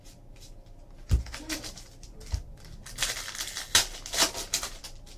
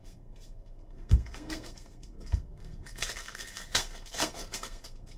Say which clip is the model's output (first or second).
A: second